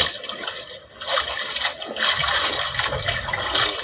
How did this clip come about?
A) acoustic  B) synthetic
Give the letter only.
A